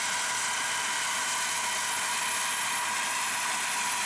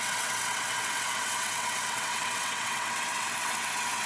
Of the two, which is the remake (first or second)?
second